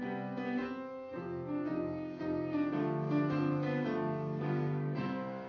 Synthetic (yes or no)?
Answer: yes